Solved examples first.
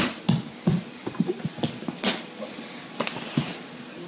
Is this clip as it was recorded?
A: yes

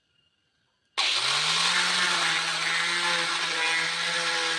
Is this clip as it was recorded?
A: yes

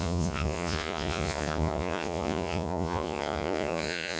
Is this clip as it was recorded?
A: no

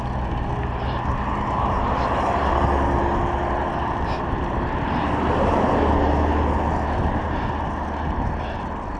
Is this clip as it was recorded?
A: yes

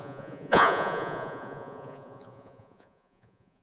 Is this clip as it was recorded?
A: no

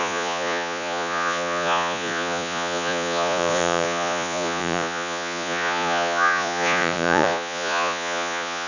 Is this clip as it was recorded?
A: no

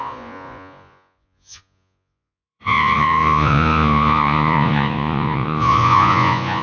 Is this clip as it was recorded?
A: no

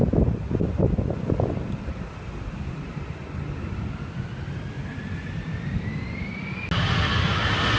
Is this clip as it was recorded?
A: yes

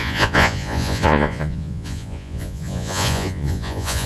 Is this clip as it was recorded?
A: no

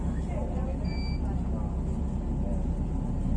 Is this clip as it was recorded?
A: yes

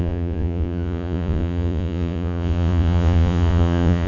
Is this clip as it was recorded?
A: no